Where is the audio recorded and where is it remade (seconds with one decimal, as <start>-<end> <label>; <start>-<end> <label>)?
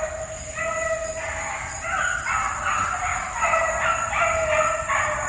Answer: 0.0-5.3 recorded